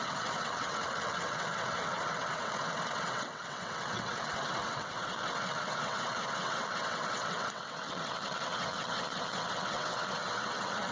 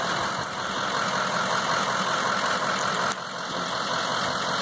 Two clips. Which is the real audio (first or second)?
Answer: second